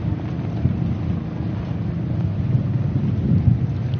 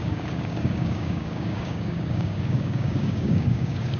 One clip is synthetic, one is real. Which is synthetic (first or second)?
second